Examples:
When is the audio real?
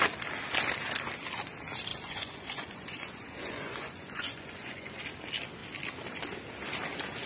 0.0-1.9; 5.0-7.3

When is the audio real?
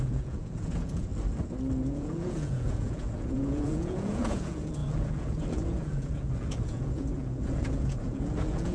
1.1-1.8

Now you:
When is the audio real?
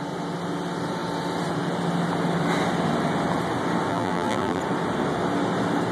0.0-3.9; 4.6-5.9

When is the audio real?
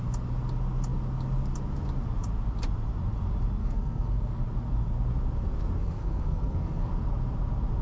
0.0-3.6; 4.4-5.8; 6.9-7.8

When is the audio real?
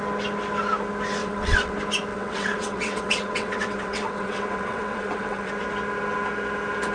0.0-1.2; 1.7-2.1; 5.5-6.9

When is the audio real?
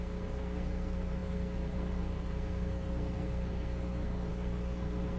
none